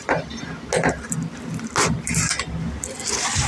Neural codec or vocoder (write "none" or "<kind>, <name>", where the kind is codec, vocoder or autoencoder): none